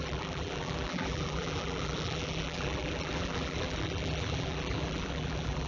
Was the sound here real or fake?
fake